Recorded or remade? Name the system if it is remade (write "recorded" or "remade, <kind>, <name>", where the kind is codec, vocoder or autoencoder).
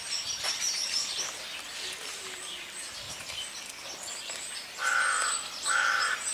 recorded